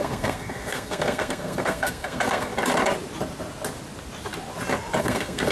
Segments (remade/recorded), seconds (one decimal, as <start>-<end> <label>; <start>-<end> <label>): 0.0-2.5 remade; 2.5-5.0 recorded; 5.0-5.5 remade